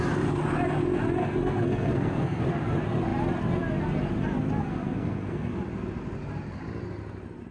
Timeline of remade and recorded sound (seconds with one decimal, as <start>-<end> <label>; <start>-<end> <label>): 0.0-1.2 recorded; 1.2-2.4 remade; 2.4-4.6 recorded; 4.6-5.5 remade; 5.5-7.5 recorded